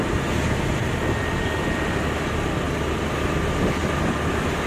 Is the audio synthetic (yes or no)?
no